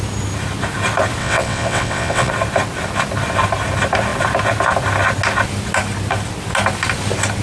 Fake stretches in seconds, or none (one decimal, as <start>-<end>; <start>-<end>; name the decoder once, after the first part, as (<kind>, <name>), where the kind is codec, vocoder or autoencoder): 1.2-2.3 (vocoder, WaveNeXt)